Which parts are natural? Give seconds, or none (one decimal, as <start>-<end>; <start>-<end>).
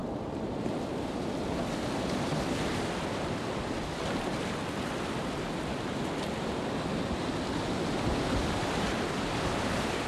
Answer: 0.0-10.1